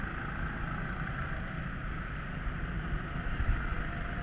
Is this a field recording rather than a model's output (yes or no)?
yes